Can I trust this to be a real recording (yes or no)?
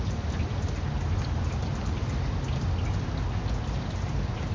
yes